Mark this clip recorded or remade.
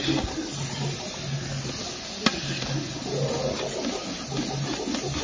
recorded